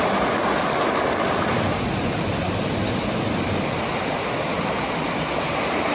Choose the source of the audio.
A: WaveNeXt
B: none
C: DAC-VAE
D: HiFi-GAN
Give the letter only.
B